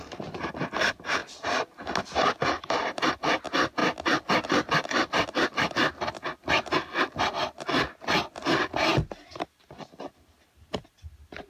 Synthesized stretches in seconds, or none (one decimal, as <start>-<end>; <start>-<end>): none

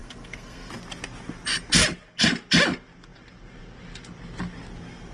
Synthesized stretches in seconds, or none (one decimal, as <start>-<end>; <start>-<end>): 0.0-0.7

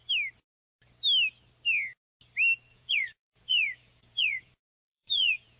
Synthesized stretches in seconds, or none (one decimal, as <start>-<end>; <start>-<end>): 2.7-5.6

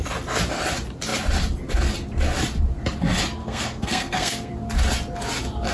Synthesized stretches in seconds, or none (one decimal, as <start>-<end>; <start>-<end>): 3.4-4.5

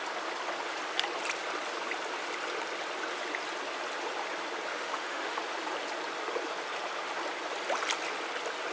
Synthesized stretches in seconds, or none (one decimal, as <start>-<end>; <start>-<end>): 4.7-5.4

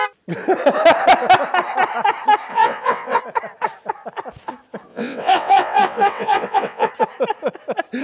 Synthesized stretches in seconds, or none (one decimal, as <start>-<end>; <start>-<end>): 2.5-3.2; 4.9-6.9

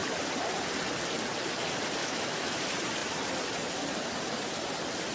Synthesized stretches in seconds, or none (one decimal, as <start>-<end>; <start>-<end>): 2.0-2.6

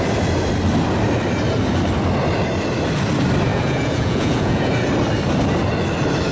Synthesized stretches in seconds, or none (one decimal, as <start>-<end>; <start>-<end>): 3.5-4.7